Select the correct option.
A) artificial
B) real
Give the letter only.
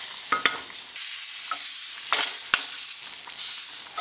B